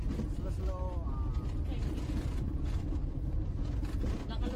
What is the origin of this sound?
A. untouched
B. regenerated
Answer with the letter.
A